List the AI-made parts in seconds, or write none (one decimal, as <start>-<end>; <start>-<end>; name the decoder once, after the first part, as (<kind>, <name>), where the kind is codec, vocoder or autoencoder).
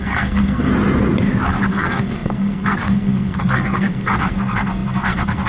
0.0-0.7 (codec, SNAC); 1.7-5.5